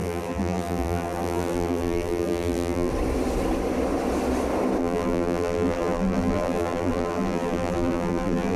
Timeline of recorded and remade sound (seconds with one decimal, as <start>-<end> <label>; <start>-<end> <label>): 0.0-2.9 remade; 2.9-4.8 recorded; 4.8-8.6 remade